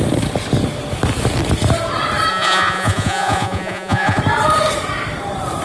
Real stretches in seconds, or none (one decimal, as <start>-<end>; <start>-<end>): 0.0-2.3; 4.2-5.6